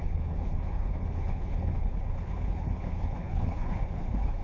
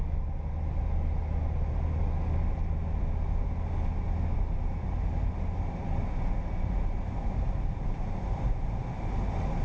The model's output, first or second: first